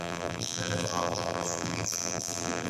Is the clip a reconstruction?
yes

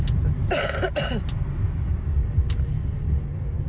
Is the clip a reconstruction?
no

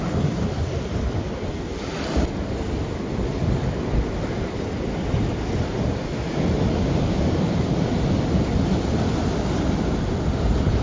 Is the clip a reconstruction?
no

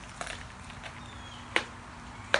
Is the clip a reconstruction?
no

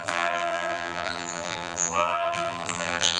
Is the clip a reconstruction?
yes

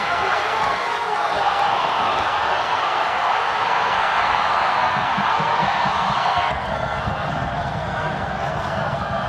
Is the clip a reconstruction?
yes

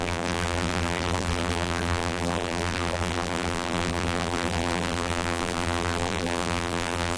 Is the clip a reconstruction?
yes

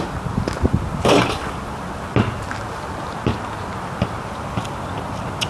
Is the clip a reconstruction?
no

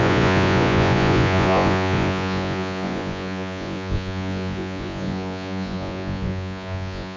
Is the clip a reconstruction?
yes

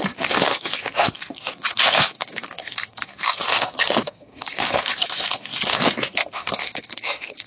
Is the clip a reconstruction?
yes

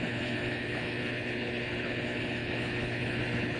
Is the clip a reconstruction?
yes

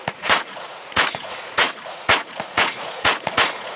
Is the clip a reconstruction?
yes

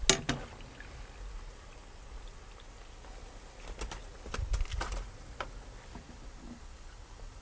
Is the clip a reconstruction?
no